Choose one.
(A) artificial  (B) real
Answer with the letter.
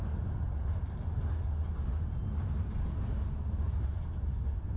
B